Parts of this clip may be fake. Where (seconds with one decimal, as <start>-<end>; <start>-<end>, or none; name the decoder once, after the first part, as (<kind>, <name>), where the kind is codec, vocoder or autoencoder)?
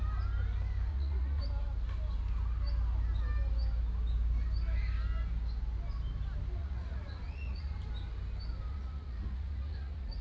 0.9-1.4 (vocoder, Vocos); 6.6-7.8; 8.7-10.2